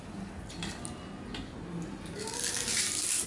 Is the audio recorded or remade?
recorded